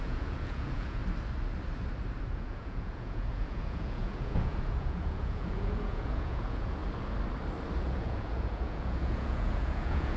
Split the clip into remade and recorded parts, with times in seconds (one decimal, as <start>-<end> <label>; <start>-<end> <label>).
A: 0.0-1.0 remade; 1.0-2.2 recorded; 2.2-6.8 remade; 6.8-7.8 recorded; 7.8-10.2 remade